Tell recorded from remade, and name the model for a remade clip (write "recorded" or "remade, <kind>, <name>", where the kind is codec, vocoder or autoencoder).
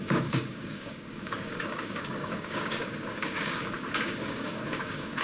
remade, codec, DAC